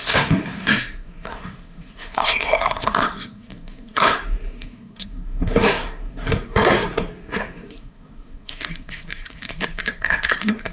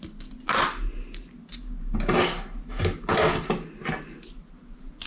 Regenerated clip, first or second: first